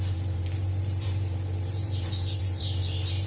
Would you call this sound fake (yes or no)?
yes